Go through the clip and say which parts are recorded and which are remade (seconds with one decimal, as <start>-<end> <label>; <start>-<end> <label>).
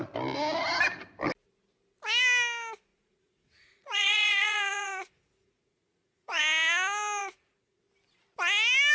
0.0-2.9 recorded; 2.9-6.4 remade; 6.4-7.2 recorded; 7.2-7.8 remade; 7.8-8.9 recorded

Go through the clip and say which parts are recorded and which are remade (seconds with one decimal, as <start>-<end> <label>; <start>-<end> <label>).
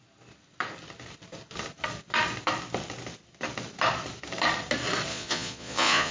0.0-5.1 recorded; 5.1-6.1 remade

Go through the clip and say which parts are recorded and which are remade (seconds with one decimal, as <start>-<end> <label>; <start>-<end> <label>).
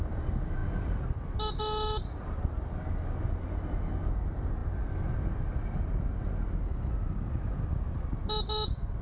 0.0-9.0 recorded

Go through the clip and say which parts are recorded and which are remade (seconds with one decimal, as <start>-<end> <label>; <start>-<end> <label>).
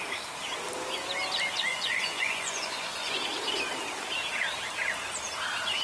0.0-1.7 recorded; 1.7-3.2 remade; 3.2-5.8 recorded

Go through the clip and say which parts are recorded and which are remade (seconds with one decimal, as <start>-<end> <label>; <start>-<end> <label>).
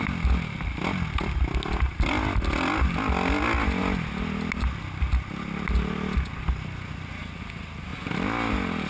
0.0-8.9 recorded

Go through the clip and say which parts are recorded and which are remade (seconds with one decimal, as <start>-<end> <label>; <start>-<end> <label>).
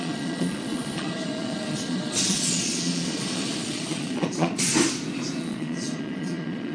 0.0-4.7 remade; 4.7-5.4 recorded; 5.4-6.7 remade